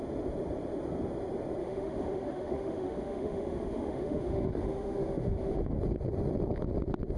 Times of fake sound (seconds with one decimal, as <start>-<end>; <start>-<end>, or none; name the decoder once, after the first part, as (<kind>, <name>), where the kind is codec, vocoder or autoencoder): 1.6-5.8 (autoencoder, DAC-VAE)